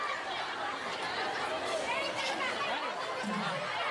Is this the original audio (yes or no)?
yes